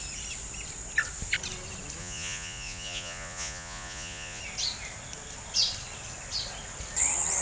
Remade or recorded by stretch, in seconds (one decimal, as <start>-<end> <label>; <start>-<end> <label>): 0.0-2.0 recorded; 2.0-4.4 remade; 4.4-7.4 recorded